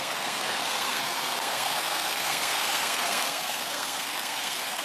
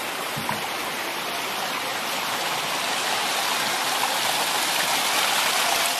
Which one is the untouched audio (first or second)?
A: second